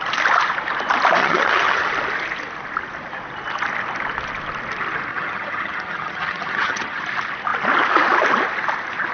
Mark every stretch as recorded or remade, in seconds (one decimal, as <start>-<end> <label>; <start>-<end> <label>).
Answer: 0.0-1.2 recorded; 1.2-1.9 remade; 1.9-5.1 recorded; 5.1-7.0 remade; 7.0-9.1 recorded